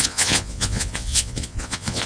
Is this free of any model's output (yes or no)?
no